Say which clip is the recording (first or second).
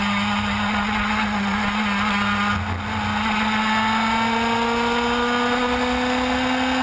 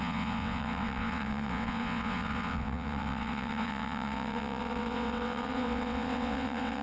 first